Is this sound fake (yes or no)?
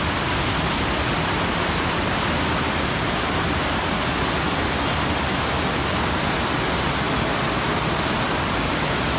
no